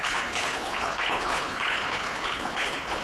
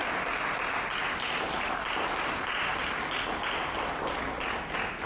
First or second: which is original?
second